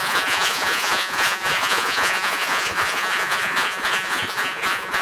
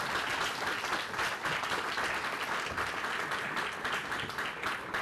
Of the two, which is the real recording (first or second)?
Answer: second